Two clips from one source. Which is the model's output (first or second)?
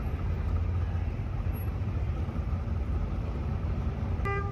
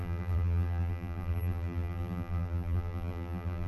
second